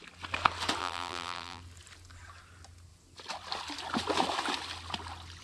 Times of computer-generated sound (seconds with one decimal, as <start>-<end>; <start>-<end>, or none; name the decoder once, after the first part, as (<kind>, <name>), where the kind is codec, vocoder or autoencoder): 0.8-1.6 (vocoder, BigVGAN v2)